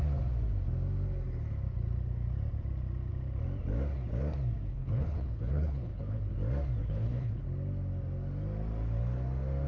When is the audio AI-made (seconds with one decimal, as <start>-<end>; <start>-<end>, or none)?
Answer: 4.7-6.2; 6.8-7.4